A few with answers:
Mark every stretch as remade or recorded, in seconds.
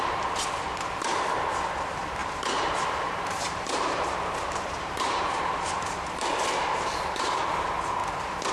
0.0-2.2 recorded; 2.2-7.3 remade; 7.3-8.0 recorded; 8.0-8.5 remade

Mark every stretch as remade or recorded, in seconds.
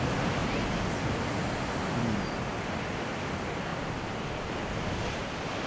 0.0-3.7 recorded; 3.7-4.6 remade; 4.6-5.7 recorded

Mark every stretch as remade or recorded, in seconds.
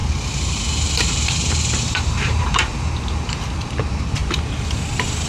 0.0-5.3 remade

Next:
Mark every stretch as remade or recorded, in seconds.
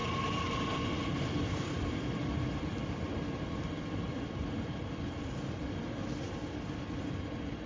0.0-2.8 remade; 2.8-7.0 recorded; 7.0-7.7 remade